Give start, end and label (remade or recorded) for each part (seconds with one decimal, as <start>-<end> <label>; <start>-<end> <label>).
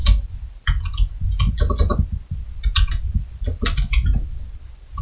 0.0-5.0 recorded